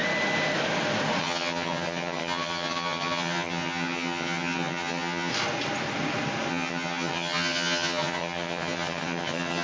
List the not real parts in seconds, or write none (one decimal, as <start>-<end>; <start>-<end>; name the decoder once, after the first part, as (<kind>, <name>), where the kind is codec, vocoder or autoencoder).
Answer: 1.2-5.3 (vocoder, HiFi-GAN); 6.5-9.6